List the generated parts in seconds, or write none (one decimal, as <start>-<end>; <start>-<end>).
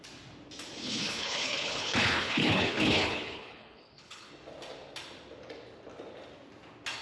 0.8-4.3